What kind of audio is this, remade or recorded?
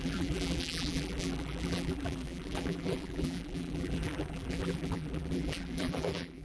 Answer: remade